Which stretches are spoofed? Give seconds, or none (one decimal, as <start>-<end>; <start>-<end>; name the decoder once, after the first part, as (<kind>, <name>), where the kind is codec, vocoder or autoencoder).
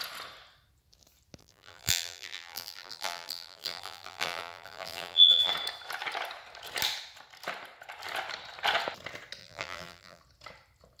1.4-5.5 (vocoder, BigVGAN v2); 9.4-10.2